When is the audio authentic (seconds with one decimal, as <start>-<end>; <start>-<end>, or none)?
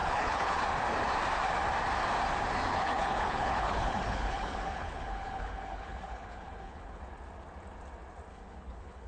0.6-2.7; 7.0-8.3